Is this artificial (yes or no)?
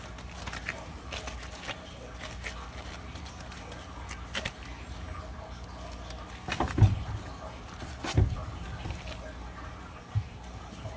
no